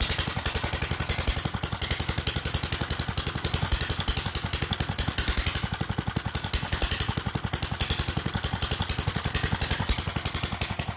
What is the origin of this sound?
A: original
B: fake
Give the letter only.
A